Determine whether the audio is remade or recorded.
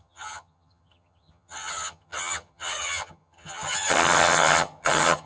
remade